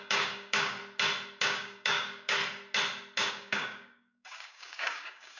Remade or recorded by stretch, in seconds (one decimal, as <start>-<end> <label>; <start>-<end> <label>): 0.0-0.8 remade; 0.8-1.4 recorded; 1.4-2.4 remade; 2.4-3.3 recorded; 3.3-5.4 remade